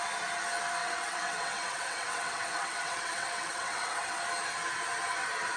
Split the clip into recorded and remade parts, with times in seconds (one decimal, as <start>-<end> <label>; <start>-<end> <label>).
0.0-0.8 recorded; 0.8-4.2 remade; 4.2-5.6 recorded